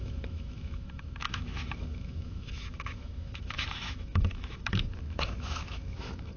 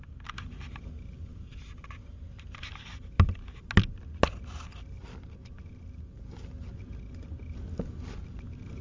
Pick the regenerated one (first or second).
first